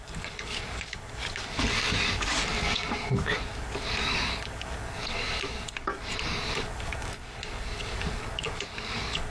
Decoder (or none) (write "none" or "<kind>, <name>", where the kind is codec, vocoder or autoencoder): codec, DAC